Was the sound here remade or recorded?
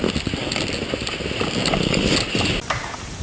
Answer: recorded